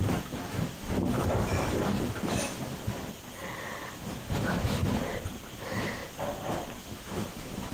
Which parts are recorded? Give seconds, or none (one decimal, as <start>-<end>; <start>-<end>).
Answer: 2.8-4.1; 4.8-5.6; 6.0-6.8